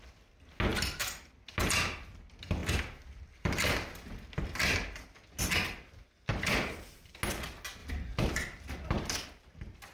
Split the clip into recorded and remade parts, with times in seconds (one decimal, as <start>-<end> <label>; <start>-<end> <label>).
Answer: 0.0-0.7 recorded; 0.7-1.3 remade; 1.3-2.6 recorded; 2.6-5.4 remade; 5.4-6.3 recorded; 6.3-7.1 remade; 7.1-7.8 recorded; 7.8-8.6 remade; 8.6-9.9 recorded